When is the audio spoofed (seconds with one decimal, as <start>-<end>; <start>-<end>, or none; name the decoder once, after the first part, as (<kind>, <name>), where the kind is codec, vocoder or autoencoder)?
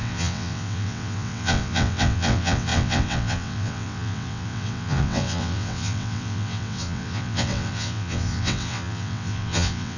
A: 0.0-10.0 (vocoder, WaveNeXt)